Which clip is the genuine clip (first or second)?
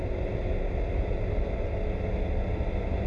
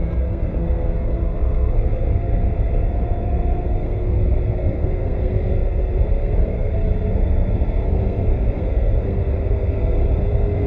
first